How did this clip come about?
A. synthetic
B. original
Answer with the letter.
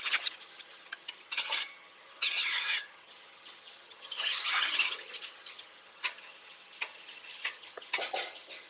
A